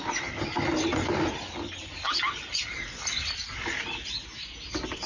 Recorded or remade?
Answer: recorded